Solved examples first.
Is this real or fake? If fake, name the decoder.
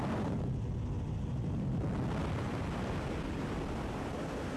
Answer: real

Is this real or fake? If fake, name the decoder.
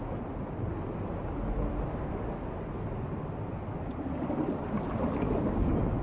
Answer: real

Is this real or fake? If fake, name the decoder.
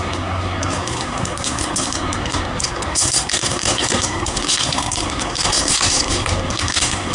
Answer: fake, codec, SNAC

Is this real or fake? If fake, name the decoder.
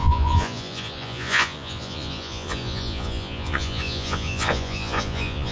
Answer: fake, vocoder, Vocos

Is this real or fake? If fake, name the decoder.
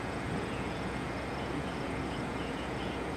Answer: fake, vocoder, Vocos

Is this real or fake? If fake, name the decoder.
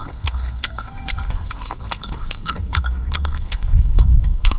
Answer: fake, codec, SNAC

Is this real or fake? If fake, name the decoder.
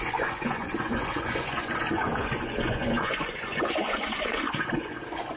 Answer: fake, vocoder, Vocos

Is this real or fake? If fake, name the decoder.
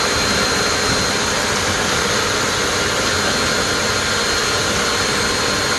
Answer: real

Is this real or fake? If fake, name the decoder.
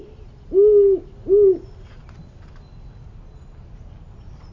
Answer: real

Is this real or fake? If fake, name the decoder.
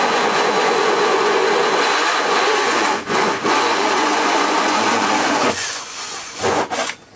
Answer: fake, vocoder, Vocos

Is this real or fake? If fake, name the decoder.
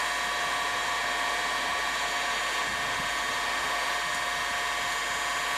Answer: real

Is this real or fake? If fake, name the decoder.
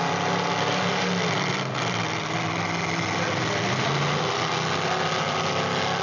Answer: real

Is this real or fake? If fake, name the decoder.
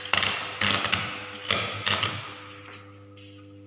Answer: real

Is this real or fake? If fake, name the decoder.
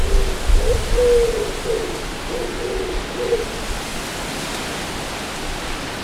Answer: real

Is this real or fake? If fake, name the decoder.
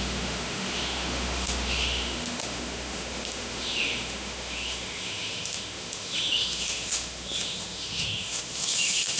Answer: fake, autoencoder, DAC-VAE